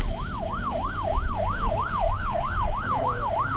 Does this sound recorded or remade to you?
remade